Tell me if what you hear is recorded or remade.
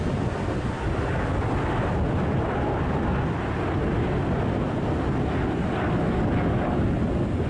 recorded